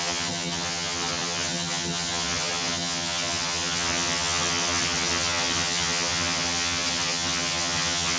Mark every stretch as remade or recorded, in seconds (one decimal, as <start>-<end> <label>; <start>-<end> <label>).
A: 0.0-8.2 remade